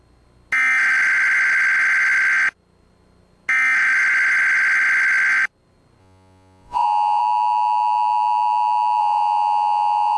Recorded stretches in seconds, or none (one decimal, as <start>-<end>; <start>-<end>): 0.0-6.0; 7.2-9.0